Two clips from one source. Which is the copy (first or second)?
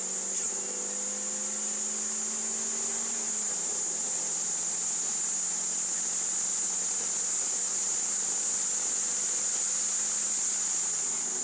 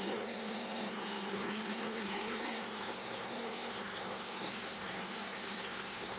second